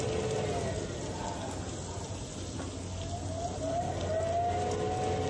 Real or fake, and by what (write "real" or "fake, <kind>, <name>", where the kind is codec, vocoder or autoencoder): real